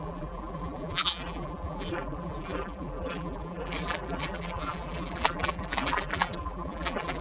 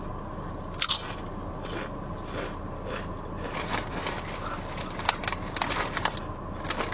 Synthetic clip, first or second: first